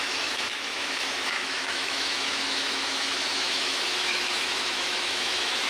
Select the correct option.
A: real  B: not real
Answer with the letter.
B